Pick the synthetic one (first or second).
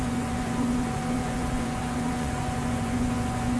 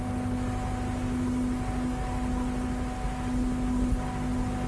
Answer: first